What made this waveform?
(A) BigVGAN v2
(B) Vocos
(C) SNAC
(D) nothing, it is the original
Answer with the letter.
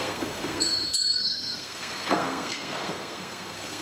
C